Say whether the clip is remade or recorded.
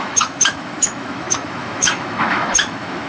remade